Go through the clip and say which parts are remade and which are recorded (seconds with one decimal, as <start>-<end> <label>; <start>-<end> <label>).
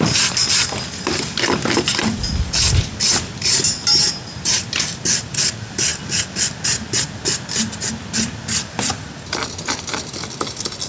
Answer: 0.0-10.9 recorded